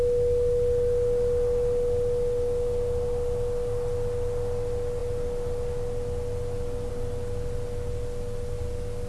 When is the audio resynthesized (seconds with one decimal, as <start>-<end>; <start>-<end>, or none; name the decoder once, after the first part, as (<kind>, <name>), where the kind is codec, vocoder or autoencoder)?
none

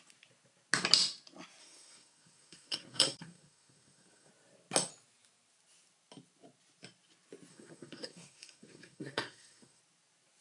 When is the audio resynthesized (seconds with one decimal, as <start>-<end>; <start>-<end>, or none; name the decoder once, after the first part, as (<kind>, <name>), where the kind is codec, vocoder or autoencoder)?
1.6-4.3 (codec, SNAC); 7.5-9.8

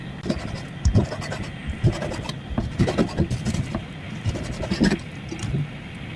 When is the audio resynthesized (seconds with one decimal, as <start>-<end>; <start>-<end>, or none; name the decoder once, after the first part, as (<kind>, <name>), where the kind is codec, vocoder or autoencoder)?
none